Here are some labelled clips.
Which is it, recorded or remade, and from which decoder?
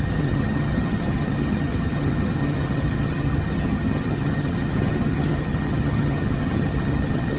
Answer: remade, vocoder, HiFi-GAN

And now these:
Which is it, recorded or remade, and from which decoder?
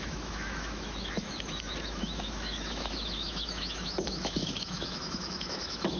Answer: remade, autoencoder, DAC-VAE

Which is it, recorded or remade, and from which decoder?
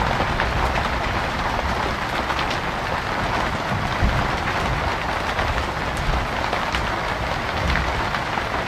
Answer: recorded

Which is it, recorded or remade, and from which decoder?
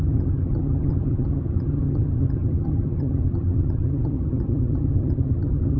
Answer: remade, vocoder, HiFi-GAN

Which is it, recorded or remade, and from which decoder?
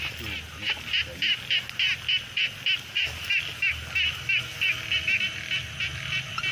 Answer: recorded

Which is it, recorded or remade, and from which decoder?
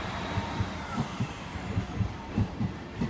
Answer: remade, vocoder, BigVGAN v2